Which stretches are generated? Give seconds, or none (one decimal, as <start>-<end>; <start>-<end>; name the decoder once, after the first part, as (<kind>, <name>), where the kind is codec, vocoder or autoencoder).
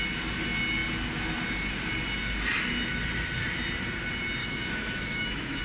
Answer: 4.4-5.6 (autoencoder, DAC-VAE)